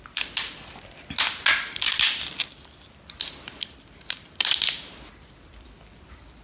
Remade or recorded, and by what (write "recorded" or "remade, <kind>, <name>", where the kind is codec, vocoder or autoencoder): recorded